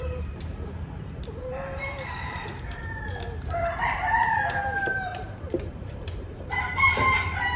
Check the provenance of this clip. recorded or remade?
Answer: remade